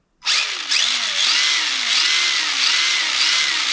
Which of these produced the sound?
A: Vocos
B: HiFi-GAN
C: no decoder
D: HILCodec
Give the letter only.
C